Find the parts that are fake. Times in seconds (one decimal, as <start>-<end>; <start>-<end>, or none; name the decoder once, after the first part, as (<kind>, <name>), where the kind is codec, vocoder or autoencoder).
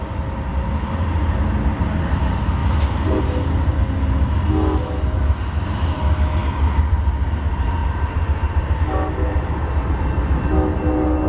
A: 2.6-3.2 (vocoder, BigVGAN v2); 7.8-8.8